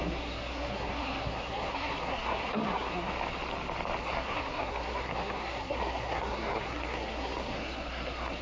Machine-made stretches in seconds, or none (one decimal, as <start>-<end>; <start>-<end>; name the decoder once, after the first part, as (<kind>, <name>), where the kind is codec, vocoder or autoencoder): 0.0-3.1 (codec, SNAC); 4.0-8.4